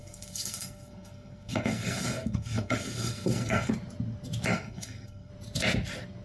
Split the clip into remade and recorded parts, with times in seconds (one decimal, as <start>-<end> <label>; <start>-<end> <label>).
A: 0.0-3.7 remade; 3.7-4.5 recorded; 4.5-5.3 remade; 5.3-6.2 recorded